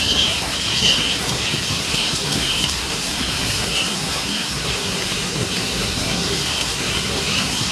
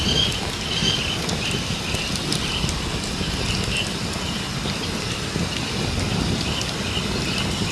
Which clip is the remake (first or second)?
first